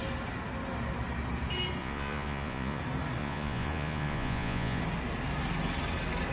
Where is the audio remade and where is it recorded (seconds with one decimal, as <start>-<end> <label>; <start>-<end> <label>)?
0.0-1.8 recorded; 1.8-2.8 remade; 2.8-3.2 recorded; 3.2-4.8 remade; 4.8-6.3 recorded